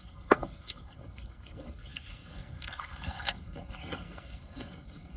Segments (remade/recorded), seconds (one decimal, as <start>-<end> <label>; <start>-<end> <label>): 0.0-5.2 remade

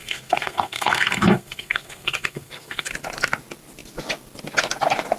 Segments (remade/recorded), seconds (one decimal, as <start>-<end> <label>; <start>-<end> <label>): 0.0-2.9 remade; 2.9-5.2 recorded

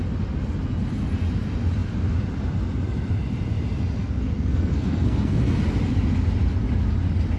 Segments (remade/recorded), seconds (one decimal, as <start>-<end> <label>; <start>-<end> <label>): 0.0-4.0 recorded; 4.0-5.6 remade; 5.6-7.4 recorded

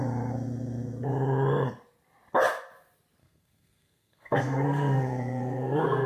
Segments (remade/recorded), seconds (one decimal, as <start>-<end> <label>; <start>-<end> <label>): 0.0-3.2 recorded; 3.2-6.1 remade

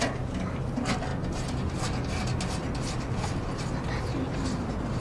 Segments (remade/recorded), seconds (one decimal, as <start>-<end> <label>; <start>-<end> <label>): 0.0-5.0 recorded

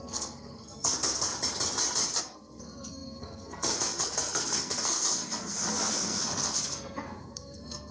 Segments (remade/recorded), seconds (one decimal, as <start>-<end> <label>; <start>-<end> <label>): 0.0-1.3 remade; 1.3-2.2 recorded; 2.2-7.9 remade